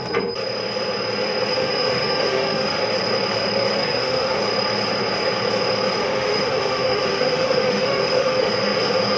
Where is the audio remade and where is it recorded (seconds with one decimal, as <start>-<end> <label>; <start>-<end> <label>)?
0.0-1.5 recorded; 1.5-2.8 remade; 2.8-3.8 recorded; 3.8-4.4 remade; 4.4-6.0 recorded; 6.0-8.5 remade; 8.5-9.2 recorded